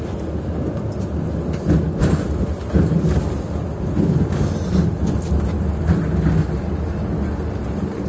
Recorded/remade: recorded